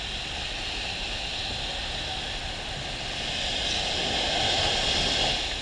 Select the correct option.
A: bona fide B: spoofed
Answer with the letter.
A